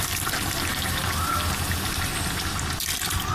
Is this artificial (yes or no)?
no